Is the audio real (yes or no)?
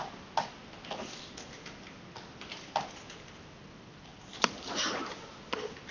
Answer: yes